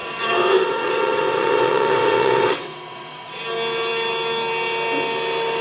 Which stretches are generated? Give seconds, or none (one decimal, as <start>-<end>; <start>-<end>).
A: 0.0-3.4